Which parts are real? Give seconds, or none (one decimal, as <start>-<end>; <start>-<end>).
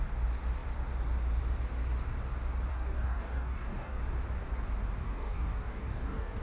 0.0-2.7; 4.0-5.0